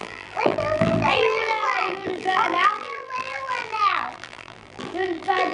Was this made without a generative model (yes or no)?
no